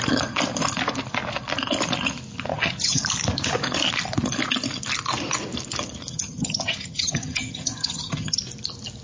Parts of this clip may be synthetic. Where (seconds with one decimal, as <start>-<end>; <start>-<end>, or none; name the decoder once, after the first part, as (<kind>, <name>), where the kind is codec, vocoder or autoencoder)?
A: 2.5-3.0 (vocoder, HiFi-GAN); 6.1-8.4